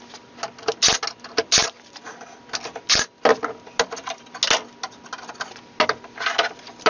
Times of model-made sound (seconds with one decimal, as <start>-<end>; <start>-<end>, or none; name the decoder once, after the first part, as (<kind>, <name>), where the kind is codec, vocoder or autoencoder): 1.6-2.4 (vocoder, BigVGAN v2)